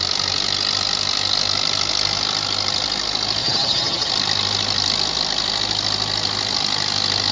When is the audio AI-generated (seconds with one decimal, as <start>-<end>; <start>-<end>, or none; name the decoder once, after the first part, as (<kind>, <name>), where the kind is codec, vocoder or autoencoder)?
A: 3.4-4.1 (vocoder, HiFi-GAN)